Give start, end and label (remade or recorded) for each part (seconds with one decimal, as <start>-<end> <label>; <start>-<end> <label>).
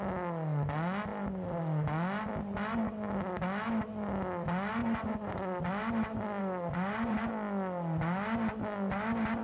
0.0-4.8 recorded; 4.8-5.7 remade; 5.7-6.4 recorded; 6.4-7.3 remade; 7.3-9.4 recorded